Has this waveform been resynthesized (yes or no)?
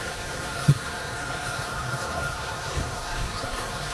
yes